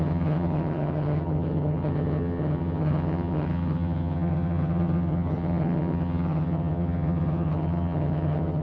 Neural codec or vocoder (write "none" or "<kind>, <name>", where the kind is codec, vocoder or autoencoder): vocoder, HiFi-GAN